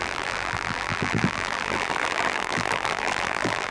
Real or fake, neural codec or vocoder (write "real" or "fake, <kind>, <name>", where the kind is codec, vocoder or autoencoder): fake, vocoder, BigVGAN v2